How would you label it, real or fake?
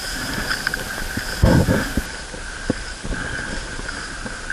real